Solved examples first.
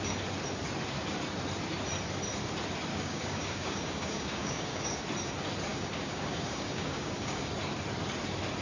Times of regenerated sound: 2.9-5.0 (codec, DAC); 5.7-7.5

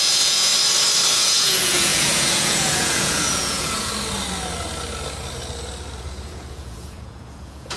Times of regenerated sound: 0.0-0.5 (vocoder, Vocos); 1.1-3.9; 6.0-7.8

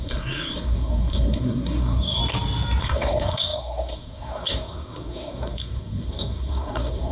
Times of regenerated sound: 0.0-2.2 (codec, SNAC); 2.8-7.1

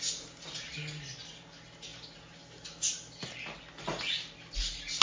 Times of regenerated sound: none